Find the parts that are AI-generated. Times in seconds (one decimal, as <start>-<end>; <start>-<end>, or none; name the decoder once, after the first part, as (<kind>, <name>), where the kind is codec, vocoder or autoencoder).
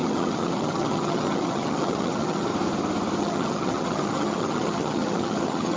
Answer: 0.0-2.5 (vocoder, HiFi-GAN); 3.2-5.8